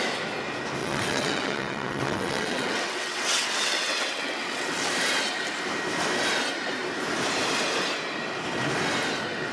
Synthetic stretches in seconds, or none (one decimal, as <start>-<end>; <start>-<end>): 0.8-4.9